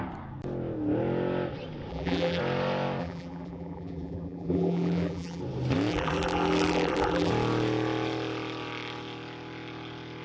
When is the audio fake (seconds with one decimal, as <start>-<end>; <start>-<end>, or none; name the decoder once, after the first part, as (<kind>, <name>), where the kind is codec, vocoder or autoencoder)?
1.9-2.4 (vocoder, BigVGAN v2); 3.0-5.4; 5.9-7.3